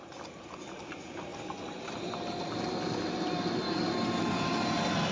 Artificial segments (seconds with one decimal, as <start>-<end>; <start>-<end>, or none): none